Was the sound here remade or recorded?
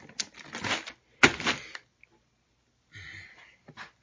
recorded